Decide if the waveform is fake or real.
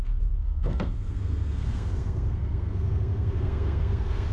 fake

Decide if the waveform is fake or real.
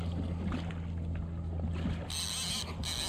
real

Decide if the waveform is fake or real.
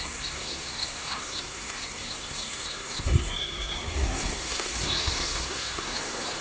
fake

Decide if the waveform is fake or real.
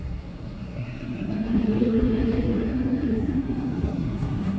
fake